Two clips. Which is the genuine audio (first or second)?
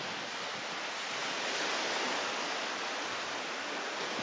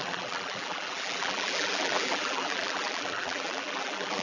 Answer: first